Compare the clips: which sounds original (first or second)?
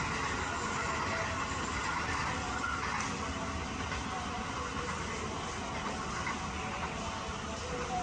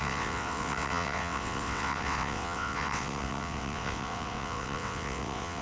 first